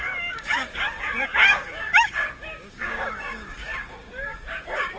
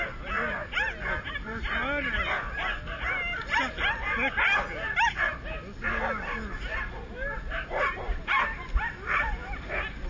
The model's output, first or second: first